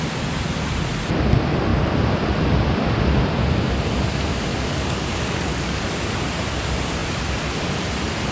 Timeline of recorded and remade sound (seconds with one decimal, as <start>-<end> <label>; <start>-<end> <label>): 0.0-4.5 recorded; 4.5-5.8 remade; 5.8-8.3 recorded